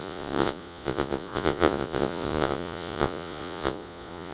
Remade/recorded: remade